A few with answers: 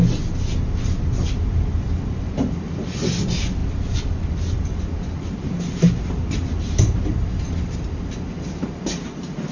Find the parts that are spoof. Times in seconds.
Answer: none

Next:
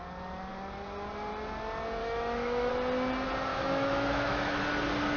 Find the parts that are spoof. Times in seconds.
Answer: 2.0-2.7 (autoencoder, DAC-VAE); 3.5-4.6

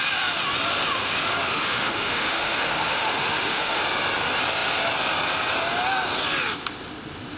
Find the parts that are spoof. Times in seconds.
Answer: 1.5-3.8 (autoencoder, DAC-VAE)

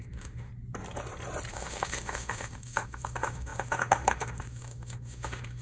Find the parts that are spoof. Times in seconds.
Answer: 0.0-0.5 (autoencoder, DAC-VAE); 1.5-5.6

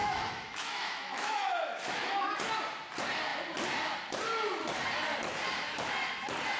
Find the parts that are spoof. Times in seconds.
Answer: 0.0-2.3 (autoencoder, DAC-VAE)

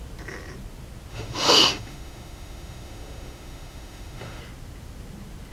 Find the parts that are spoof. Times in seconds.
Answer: 1.1-4.4 (autoencoder, DAC-VAE)

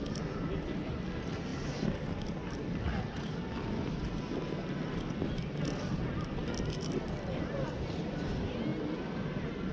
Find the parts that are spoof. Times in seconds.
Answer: none

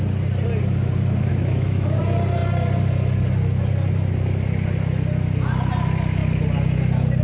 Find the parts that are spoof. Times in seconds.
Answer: 1.3-2.0 (autoencoder, DAC-VAE)